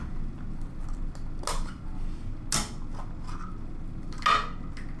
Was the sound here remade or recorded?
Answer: recorded